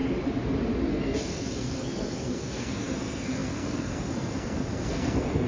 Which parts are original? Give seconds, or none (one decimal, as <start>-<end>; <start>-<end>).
0.0-0.9